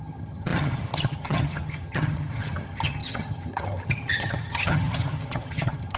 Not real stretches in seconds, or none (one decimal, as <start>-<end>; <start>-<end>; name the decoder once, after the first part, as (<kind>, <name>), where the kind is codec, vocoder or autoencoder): 0.0-6.0 (vocoder, HiFi-GAN)